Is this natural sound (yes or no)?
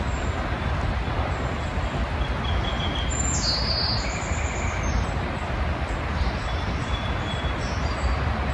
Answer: yes